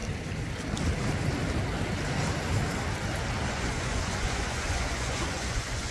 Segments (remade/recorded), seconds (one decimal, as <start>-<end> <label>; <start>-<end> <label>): 0.0-3.5 recorded; 3.5-5.9 remade